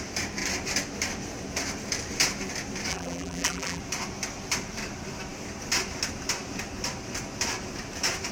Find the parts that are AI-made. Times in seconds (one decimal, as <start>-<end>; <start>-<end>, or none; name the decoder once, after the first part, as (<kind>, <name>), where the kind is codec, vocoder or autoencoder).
2.9-3.8 (vocoder, BigVGAN v2)

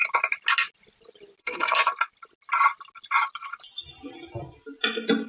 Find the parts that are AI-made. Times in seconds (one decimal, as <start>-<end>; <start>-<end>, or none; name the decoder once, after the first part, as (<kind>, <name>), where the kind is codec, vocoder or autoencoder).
1.4-1.8 (codec, SNAC)